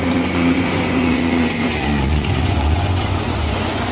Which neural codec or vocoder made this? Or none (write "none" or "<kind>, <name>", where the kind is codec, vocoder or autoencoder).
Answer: vocoder, Vocos